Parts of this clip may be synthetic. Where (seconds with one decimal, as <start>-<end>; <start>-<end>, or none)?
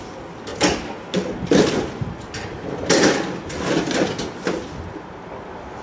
none